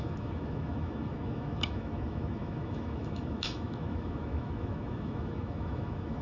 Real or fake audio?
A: fake